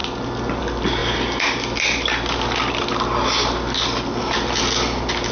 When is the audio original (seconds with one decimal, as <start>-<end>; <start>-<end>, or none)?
0.0-5.3

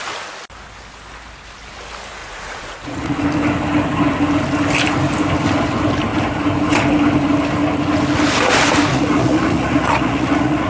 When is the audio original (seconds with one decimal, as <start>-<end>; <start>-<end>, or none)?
0.0-2.2; 3.2-8.9

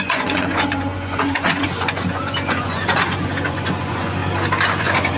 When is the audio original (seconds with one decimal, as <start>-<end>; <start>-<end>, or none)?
4.2-4.8